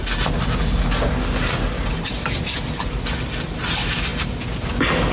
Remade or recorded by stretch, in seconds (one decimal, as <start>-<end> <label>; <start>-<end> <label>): 0.0-5.1 recorded